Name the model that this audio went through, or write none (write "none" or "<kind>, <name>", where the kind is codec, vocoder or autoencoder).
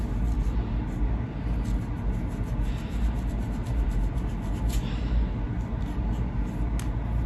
none